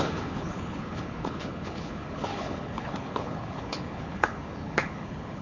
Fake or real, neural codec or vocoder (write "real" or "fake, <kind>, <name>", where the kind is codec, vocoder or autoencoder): fake, codec, HILCodec